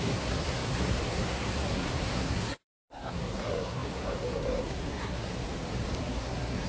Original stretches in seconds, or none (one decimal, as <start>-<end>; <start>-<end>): 5.3-6.0